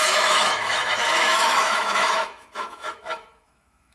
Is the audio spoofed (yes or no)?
yes